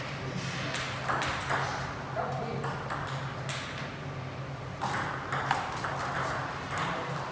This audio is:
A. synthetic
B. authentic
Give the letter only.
B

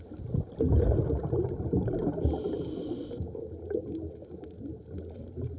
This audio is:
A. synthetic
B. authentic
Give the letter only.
B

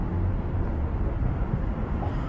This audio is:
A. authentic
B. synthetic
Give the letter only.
A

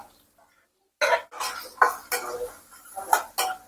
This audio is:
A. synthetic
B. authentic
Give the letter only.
B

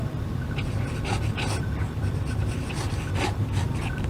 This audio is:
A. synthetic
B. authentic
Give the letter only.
B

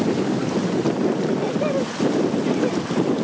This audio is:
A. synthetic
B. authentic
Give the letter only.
B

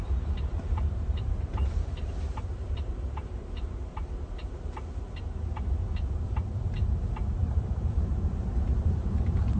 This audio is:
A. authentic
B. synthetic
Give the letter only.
B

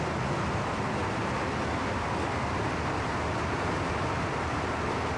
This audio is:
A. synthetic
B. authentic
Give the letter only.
B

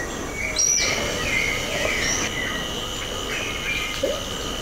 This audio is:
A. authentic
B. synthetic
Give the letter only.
A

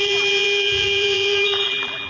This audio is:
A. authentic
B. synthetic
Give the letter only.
B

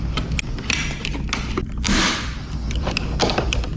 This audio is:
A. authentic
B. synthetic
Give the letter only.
B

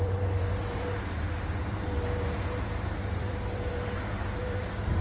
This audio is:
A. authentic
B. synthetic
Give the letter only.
B